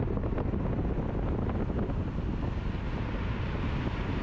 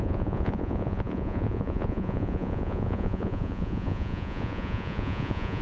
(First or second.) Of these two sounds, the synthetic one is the second